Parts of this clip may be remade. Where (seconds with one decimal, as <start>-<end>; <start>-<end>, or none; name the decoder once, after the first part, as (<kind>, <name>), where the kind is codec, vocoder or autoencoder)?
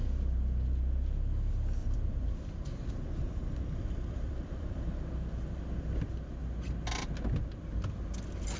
1.8-5.1 (vocoder, BigVGAN v2)